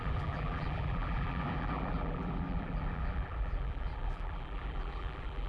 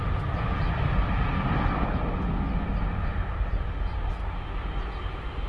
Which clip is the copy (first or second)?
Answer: first